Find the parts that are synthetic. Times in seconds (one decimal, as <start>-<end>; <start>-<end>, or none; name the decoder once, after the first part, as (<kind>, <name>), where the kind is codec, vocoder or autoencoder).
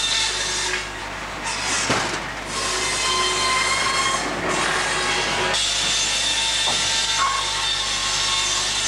none